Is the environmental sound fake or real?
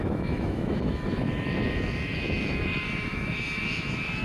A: fake